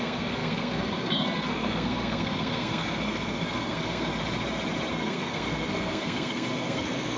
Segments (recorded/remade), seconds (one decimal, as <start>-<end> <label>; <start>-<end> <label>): 0.0-4.1 remade; 4.1-4.9 recorded; 4.9-7.2 remade